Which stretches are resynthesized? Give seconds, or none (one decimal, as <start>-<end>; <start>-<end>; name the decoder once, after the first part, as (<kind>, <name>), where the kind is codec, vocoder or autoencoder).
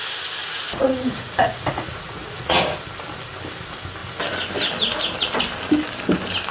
0.4-2.6 (vocoder, Vocos)